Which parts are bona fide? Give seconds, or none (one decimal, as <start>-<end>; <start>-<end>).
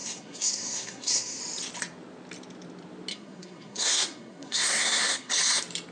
1.4-3.1; 5.3-5.9